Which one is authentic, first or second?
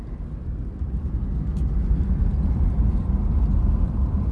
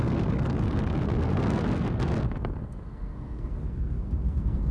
first